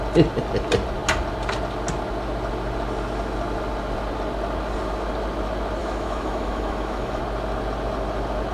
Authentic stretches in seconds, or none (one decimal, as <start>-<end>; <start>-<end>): 0.0-5.8; 7.2-8.5